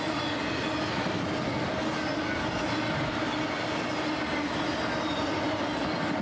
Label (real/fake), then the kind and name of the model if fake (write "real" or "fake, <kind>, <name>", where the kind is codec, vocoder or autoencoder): real